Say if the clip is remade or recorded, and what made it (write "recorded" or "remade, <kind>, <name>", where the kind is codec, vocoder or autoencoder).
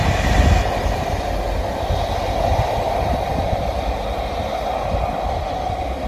recorded